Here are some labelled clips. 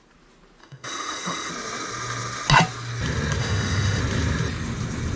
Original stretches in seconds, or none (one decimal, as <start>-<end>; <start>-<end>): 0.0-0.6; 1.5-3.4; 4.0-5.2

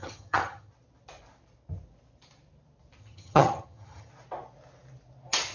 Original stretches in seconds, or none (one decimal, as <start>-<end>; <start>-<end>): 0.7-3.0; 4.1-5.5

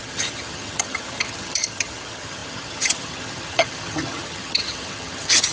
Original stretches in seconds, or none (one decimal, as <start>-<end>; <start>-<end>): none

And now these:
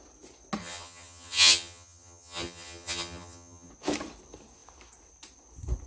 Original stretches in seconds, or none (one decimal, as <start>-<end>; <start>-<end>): 0.0-0.6; 3.7-5.9

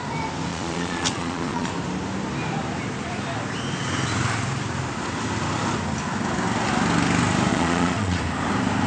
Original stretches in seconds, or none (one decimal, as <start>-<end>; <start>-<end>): 0.0-0.5; 1.7-7.5; 8.2-8.9

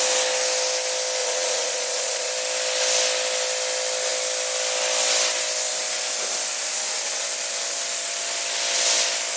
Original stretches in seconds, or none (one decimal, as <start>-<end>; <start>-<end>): 0.0-1.2; 2.3-9.4